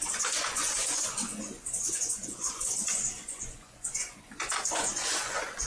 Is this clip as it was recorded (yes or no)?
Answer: no